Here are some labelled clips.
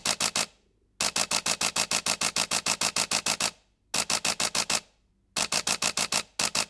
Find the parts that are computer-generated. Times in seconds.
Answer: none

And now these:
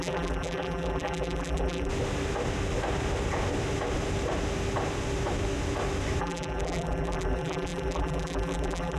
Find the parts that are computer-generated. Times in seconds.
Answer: 0.0-1.9 (vocoder, BigVGAN v2); 6.2-9.0

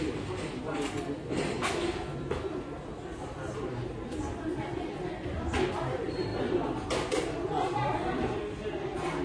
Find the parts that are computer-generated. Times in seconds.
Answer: 0.0-6.3 (vocoder, BigVGAN v2); 7.1-9.2

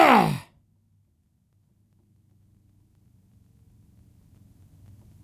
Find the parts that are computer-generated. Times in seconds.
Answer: none

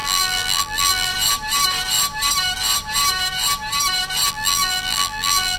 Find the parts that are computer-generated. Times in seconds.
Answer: 0.0-1.1 (vocoder, BigVGAN v2); 4.3-5.6

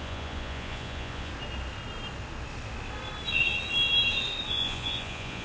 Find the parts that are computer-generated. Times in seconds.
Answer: 0.0-1.3 (vocoder, Vocos); 4.5-5.4

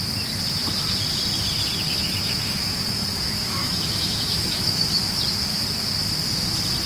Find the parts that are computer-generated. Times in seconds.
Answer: 2.0-4.9 (autoencoder, DAC-VAE)